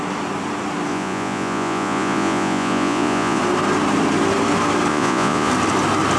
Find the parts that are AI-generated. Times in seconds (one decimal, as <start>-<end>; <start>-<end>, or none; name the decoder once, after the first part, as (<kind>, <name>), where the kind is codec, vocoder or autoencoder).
0.9-3.4 (vocoder, Vocos); 4.9-5.5